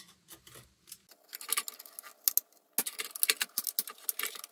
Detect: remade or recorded recorded